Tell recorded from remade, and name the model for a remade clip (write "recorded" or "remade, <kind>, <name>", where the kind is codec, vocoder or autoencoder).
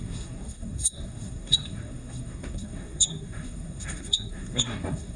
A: remade, codec, SNAC